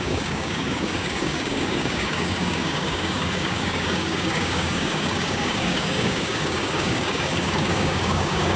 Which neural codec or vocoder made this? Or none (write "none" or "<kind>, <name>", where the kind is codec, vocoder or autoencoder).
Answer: codec, DAC